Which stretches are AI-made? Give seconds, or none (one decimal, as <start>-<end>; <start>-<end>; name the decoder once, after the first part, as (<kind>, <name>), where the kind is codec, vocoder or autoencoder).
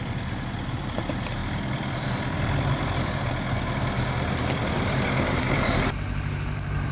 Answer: 0.0-6.9 (vocoder, BigVGAN v2)